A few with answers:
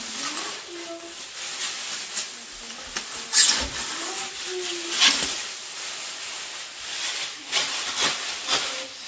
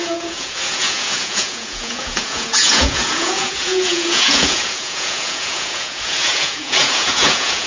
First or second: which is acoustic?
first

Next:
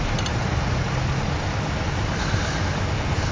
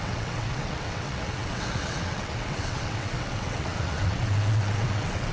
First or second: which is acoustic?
first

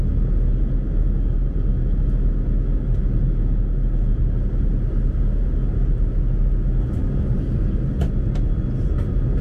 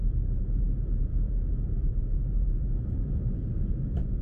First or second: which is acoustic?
first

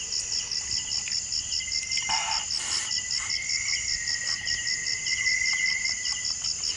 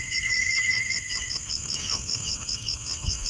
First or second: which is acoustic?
first